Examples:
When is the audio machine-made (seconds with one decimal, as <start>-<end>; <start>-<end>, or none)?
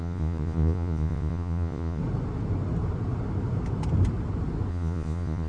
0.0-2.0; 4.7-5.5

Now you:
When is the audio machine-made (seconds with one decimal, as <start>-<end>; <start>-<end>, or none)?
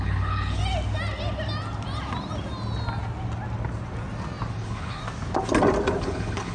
0.0-0.6; 4.5-5.0; 6.0-6.5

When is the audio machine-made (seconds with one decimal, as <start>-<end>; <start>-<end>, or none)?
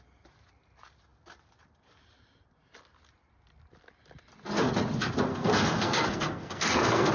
5.3-7.1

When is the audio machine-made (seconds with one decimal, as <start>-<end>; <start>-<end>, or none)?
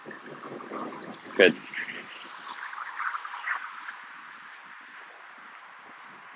none